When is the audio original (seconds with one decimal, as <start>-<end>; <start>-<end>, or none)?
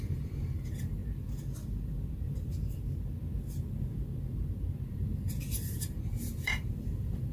1.0-4.9